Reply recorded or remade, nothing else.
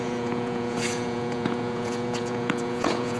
remade